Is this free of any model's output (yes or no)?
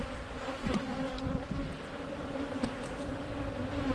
yes